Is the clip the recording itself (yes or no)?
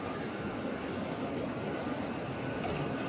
yes